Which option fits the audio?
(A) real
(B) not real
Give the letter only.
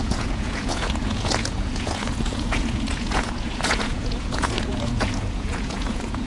B